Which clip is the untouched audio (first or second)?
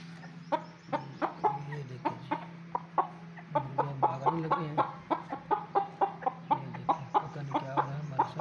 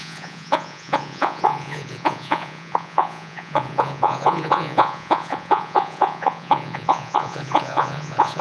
first